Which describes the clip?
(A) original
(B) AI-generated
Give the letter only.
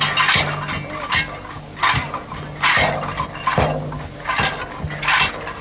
A